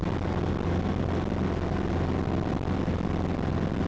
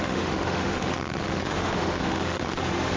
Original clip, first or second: first